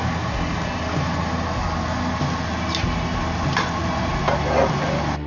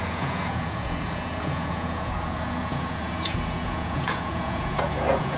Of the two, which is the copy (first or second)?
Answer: second